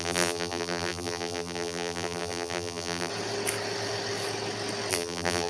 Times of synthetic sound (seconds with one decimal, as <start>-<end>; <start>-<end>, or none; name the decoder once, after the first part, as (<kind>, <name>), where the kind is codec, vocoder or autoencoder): 0.0-3.1 (vocoder, BigVGAN v2); 4.9-5.5